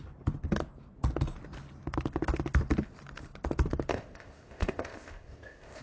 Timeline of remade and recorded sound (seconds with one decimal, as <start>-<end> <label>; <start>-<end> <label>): 0.0-3.9 recorded; 3.9-5.8 remade